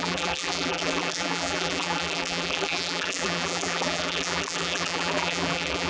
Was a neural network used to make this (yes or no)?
yes